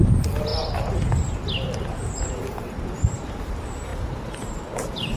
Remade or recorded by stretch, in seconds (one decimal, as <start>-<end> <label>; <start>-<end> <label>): 0.0-5.2 recorded